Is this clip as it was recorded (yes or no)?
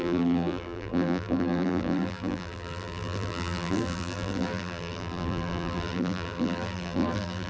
no